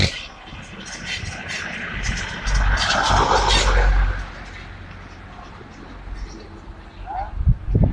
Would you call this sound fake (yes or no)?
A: no